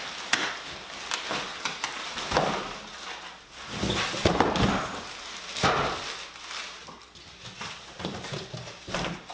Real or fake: real